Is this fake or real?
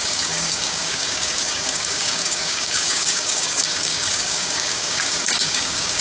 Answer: fake